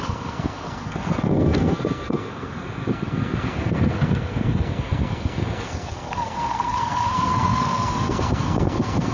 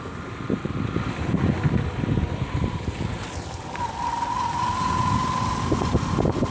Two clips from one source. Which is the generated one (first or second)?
first